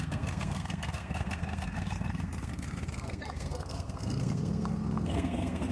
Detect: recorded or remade remade